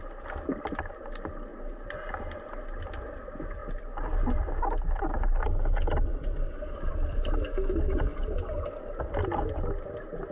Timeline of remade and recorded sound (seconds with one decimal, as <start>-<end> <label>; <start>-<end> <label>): 0.0-10.3 recorded